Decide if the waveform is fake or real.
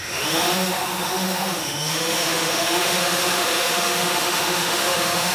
fake